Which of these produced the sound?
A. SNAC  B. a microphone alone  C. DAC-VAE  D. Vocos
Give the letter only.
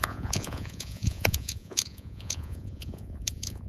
D